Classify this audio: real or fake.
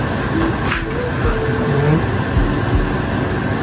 real